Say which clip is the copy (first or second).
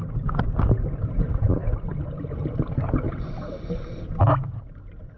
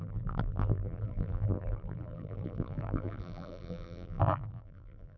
second